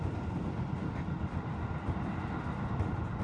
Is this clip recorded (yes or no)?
yes